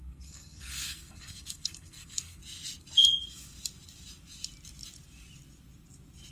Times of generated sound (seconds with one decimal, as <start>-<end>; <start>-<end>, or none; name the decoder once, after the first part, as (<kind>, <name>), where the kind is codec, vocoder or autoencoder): 0.0-2.4 (codec, SNAC)